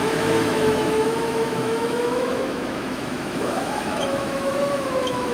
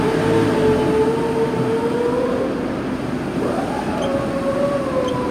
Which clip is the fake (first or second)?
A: first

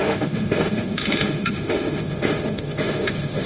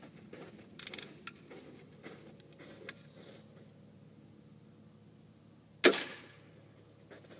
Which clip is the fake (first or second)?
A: first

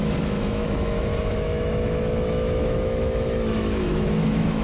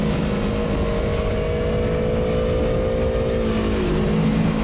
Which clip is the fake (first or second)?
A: first